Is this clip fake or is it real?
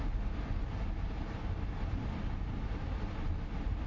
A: real